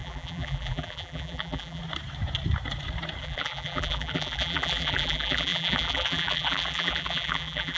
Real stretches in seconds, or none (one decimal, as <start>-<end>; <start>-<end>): 1.8-3.2